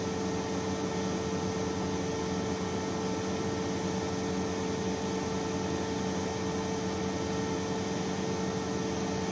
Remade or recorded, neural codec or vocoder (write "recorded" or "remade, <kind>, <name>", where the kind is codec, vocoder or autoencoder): recorded